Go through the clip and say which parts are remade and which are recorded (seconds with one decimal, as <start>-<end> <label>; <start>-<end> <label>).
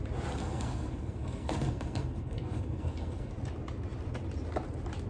0.0-0.4 recorded; 0.4-3.3 remade; 3.3-5.1 recorded